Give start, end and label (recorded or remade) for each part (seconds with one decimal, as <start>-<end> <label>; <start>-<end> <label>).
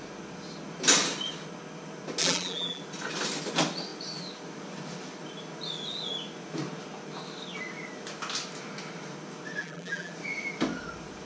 0.0-2.2 recorded; 2.2-2.8 remade; 2.8-9.6 recorded; 9.6-10.1 remade; 10.1-11.3 recorded